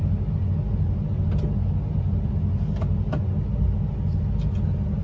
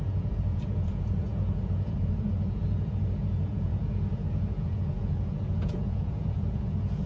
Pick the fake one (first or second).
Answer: second